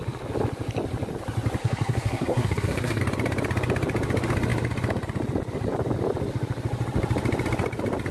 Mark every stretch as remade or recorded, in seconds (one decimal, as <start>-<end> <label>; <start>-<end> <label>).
0.0-1.6 recorded; 1.6-3.0 remade; 3.0-8.1 recorded